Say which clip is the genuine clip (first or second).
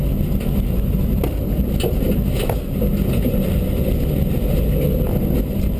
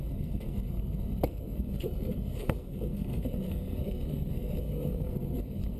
first